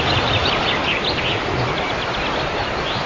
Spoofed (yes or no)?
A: no